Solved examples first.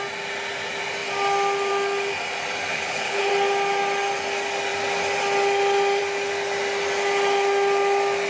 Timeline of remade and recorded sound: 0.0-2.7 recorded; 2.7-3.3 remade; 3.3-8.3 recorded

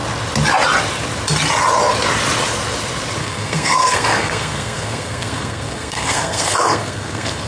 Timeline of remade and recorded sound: 0.0-3.2 recorded; 3.2-7.5 remade

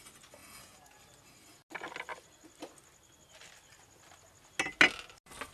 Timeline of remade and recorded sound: 0.0-0.4 recorded; 0.4-1.0 remade; 1.0-5.5 recorded

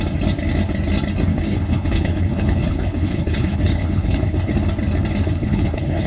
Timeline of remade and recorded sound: 0.0-1.3 recorded; 1.3-4.5 remade; 4.5-5.2 recorded; 5.2-6.1 remade

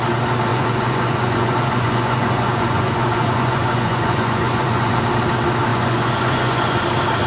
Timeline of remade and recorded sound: 0.0-0.5 recorded; 0.5-4.9 remade; 4.9-5.7 recorded; 5.7-6.8 remade; 6.8-7.3 recorded